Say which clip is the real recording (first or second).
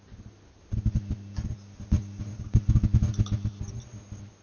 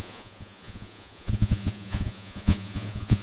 first